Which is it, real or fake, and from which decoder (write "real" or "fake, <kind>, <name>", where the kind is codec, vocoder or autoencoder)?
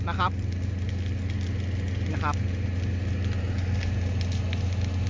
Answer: real